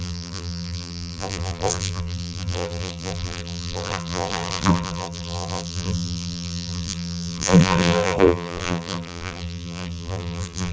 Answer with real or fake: fake